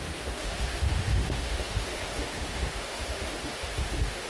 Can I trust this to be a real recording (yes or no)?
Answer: no